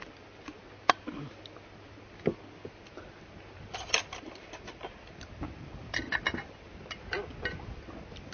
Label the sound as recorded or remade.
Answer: recorded